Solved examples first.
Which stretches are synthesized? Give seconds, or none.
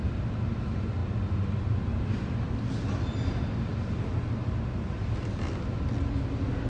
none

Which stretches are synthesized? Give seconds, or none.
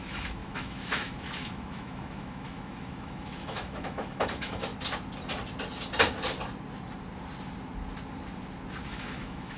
0.0-4.7 (autoencoder, DAC-VAE); 8.9-9.6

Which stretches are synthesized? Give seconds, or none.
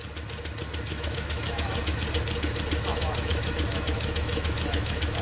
0.9-2.0 (autoencoder, DAC-VAE); 2.9-5.2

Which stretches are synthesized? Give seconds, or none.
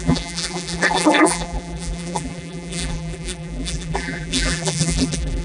0.0-5.4 (vocoder, BigVGAN v2)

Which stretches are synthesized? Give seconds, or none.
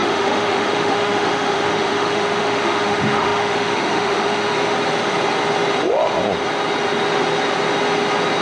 0.0-4.5 (autoencoder, DAC-VAE)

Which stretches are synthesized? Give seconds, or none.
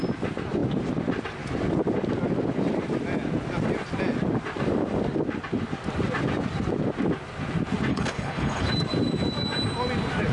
7.9-8.7 (codec, HILCodec)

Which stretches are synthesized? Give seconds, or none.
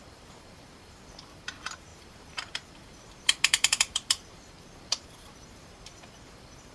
0.0-6.7 (vocoder, BigVGAN v2)